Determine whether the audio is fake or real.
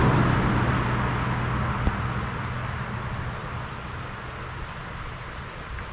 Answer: real